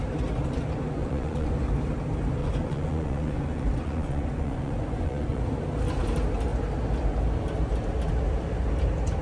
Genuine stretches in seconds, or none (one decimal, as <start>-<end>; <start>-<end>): 0.0-1.0; 1.6-2.4; 5.4-9.2